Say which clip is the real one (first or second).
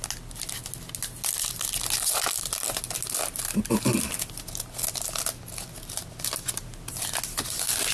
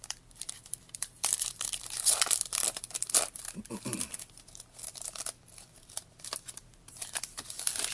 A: first